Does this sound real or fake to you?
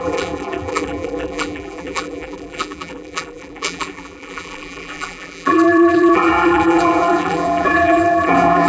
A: fake